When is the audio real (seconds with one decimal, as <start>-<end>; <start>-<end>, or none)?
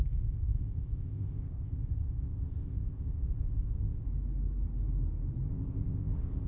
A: 4.1-5.5